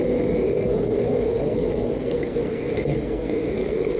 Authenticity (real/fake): fake